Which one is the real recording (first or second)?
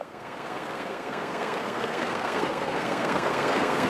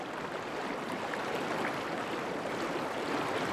second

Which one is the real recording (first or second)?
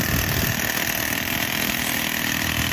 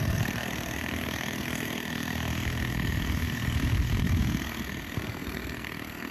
first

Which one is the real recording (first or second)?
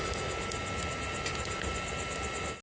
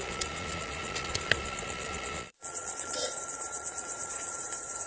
first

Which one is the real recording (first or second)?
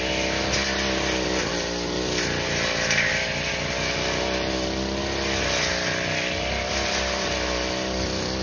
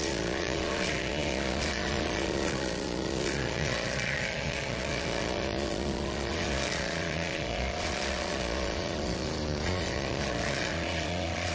first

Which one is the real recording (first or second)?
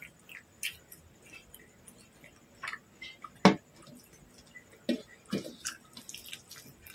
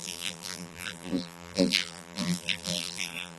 first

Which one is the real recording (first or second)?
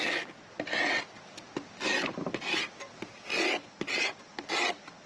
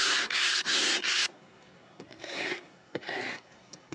first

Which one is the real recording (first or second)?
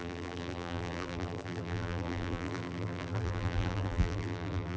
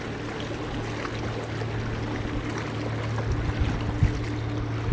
second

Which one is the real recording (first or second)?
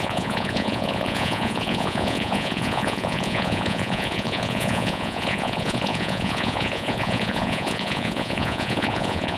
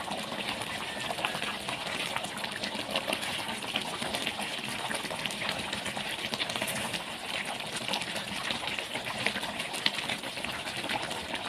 second